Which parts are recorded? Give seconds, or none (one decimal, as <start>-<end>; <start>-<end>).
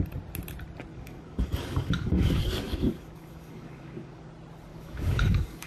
0.0-0.9; 4.3-4.7